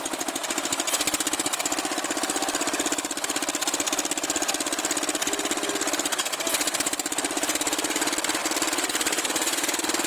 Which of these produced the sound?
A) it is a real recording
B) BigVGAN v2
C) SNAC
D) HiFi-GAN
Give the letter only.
A